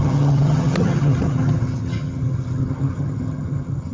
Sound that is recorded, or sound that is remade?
remade